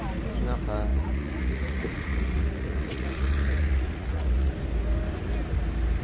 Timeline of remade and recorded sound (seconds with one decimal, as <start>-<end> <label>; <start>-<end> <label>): 0.0-0.9 recorded; 0.9-4.5 remade; 4.5-6.0 recorded